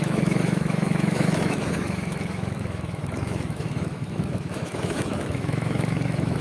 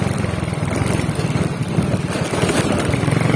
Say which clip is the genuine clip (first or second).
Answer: second